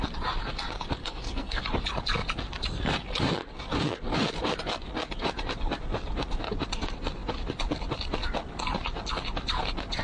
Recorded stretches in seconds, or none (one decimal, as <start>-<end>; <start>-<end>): 0.0-1.0; 1.6-10.0